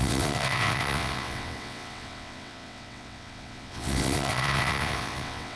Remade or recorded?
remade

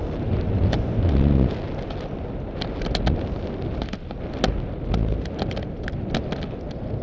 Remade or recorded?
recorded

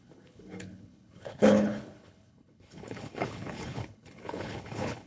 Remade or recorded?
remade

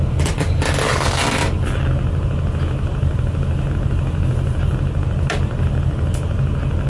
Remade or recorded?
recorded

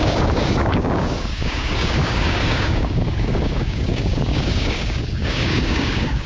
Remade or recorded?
remade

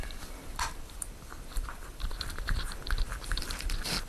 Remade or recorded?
remade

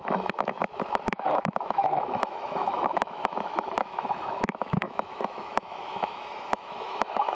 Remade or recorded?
remade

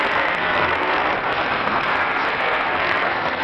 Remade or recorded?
remade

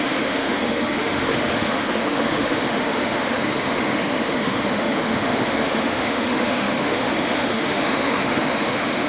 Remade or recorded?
remade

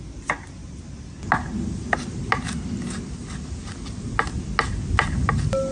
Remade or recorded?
recorded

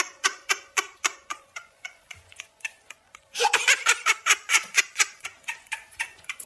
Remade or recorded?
remade